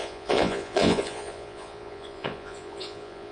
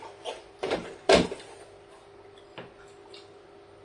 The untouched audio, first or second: second